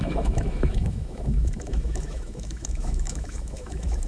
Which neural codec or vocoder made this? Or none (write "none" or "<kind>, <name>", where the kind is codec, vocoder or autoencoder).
autoencoder, DAC-VAE